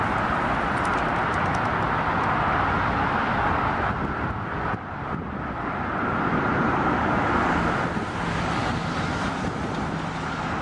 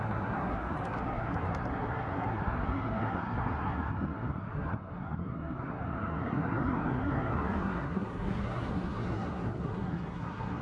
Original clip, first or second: first